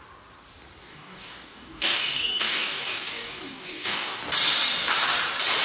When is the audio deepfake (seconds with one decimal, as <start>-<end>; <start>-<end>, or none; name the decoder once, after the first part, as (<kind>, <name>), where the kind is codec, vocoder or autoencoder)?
0.8-4.2 (codec, DAC)